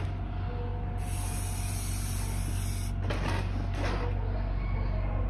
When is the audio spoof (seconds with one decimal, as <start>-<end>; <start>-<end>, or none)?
none